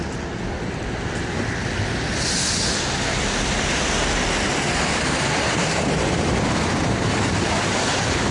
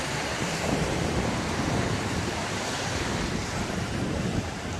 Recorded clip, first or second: first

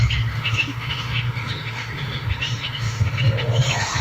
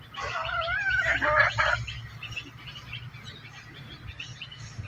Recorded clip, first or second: second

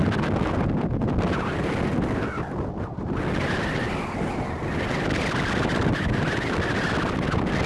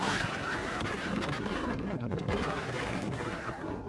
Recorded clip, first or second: first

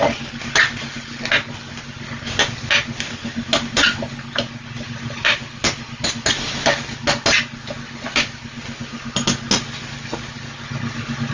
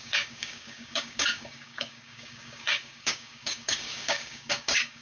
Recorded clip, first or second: first